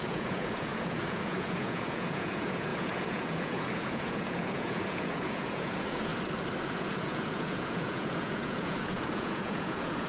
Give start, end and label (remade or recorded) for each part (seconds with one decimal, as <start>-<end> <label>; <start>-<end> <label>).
0.0-6.1 remade; 6.1-6.7 recorded; 6.7-10.1 remade